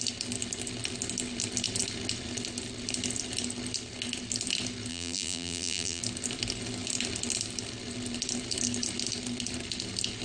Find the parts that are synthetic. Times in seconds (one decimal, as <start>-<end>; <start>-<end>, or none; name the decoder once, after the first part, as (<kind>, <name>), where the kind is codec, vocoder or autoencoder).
4.9-6.0 (vocoder, BigVGAN v2)